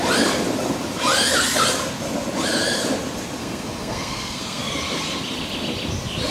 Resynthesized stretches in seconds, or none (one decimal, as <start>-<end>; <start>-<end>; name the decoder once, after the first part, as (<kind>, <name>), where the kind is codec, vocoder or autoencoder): 3.4-4.7 (codec, SNAC)